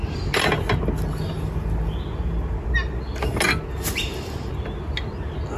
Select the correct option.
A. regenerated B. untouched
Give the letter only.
B